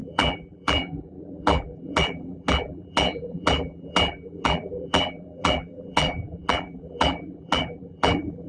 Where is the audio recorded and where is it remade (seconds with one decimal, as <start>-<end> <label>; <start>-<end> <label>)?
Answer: 0.0-8.5 remade